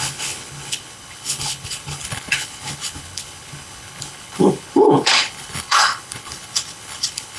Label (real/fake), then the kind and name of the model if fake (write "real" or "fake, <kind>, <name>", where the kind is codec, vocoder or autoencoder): fake, codec, HILCodec